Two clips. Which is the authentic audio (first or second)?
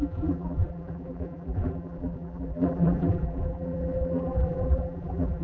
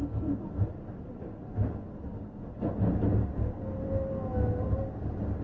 second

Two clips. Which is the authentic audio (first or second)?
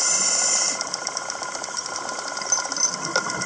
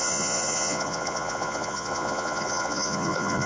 first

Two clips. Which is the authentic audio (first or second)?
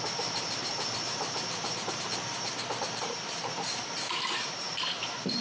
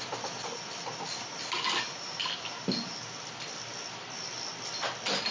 second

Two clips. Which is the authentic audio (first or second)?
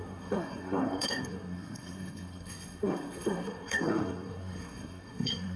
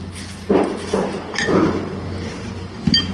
second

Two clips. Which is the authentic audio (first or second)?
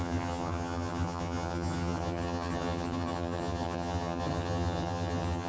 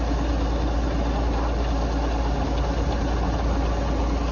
second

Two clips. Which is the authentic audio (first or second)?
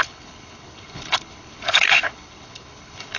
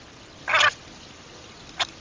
second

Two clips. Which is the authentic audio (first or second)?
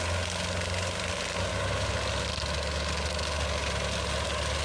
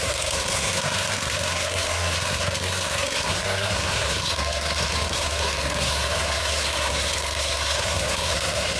first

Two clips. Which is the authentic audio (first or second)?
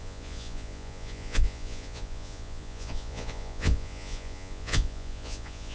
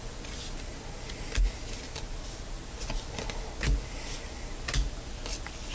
second